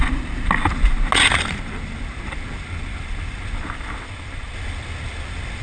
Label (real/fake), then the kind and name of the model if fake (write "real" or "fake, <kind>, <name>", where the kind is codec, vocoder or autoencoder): real